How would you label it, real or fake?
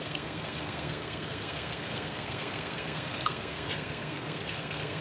fake